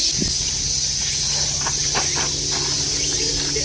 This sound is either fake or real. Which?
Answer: real